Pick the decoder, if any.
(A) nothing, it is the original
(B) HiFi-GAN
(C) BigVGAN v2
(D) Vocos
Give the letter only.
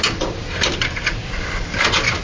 A